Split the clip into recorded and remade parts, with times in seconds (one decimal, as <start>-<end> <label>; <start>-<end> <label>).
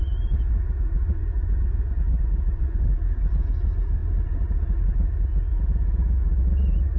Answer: 0.0-7.0 recorded